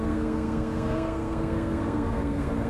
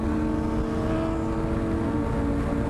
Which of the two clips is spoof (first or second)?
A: first